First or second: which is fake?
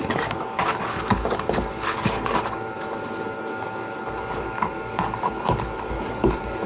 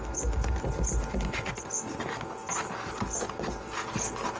first